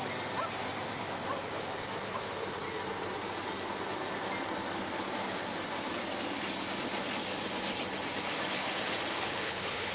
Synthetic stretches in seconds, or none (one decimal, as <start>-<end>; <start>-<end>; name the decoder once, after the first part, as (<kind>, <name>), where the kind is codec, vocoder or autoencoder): 9.1-9.9 (codec, HILCodec)